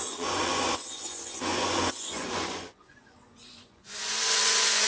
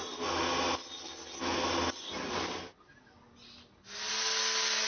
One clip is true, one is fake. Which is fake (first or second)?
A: first